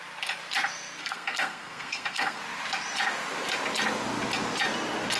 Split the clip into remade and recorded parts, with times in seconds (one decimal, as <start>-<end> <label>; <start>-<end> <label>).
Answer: 0.0-1.0 recorded; 1.0-2.4 remade; 2.4-5.2 recorded